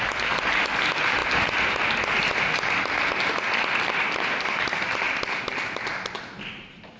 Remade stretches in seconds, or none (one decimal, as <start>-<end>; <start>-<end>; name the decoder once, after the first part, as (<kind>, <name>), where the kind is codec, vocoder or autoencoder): none